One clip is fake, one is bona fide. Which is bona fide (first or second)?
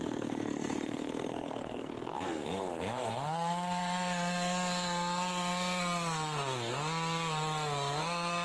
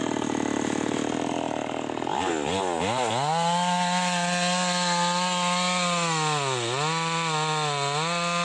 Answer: second